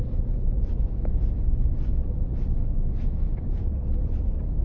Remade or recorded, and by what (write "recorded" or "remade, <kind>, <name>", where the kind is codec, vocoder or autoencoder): recorded